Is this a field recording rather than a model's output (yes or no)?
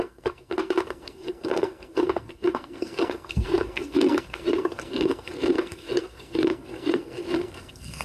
no